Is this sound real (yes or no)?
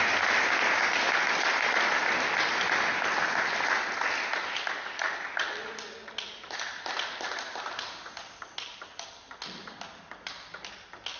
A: yes